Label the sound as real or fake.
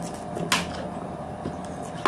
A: real